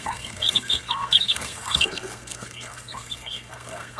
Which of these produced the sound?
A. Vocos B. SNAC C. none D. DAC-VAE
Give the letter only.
B